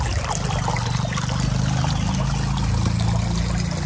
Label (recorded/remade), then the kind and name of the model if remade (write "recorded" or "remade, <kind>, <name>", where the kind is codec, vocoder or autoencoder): recorded